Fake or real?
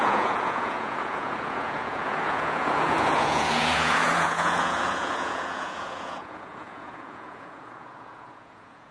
fake